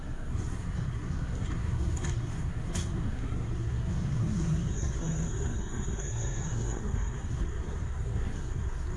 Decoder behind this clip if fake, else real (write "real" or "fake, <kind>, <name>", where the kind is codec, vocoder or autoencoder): fake, codec, SNAC